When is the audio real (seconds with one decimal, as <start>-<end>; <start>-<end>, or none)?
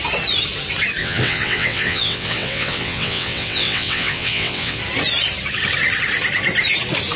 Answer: 0.0-1.0; 4.8-7.2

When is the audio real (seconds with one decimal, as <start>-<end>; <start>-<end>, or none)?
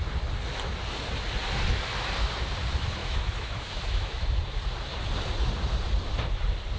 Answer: 0.0-3.0; 4.4-6.8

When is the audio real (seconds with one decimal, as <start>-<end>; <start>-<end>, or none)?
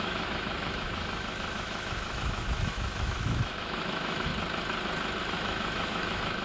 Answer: 4.3-5.2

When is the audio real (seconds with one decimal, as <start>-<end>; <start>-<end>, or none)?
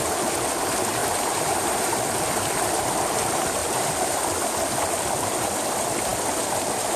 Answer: 0.0-1.0; 2.3-3.6; 4.1-7.0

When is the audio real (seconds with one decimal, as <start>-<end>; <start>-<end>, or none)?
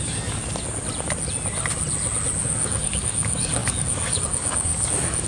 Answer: 0.4-2.4